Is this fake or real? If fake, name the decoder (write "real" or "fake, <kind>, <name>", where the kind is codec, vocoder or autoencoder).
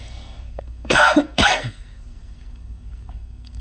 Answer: fake, codec, SNAC